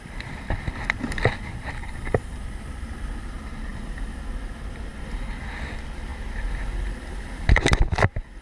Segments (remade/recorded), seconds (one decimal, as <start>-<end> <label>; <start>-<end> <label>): 0.0-1.8 recorded; 1.8-2.4 remade; 2.4-3.7 recorded; 3.7-4.2 remade; 4.2-4.9 recorded; 4.9-5.4 remade; 5.4-8.4 recorded